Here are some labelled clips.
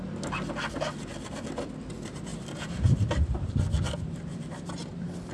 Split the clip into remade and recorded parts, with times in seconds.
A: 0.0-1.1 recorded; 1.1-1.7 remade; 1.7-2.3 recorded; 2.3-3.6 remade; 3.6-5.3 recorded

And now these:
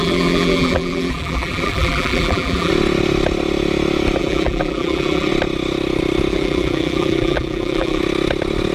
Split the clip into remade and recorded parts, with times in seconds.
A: 0.0-2.7 remade; 2.7-4.2 recorded; 4.2-5.3 remade; 5.3-6.3 recorded; 6.3-8.0 remade; 8.0-8.7 recorded

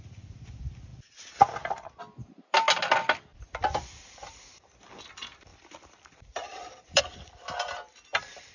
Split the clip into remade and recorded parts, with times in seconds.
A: 0.0-5.5 recorded; 5.5-7.0 remade; 7.0-8.5 recorded